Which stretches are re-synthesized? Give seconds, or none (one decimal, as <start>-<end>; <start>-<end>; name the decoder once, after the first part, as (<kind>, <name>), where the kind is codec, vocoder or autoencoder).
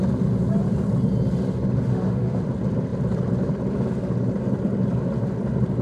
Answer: 1.9-2.4 (autoencoder, DAC-VAE)